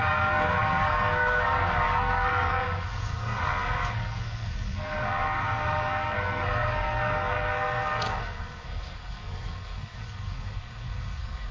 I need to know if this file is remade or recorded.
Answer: remade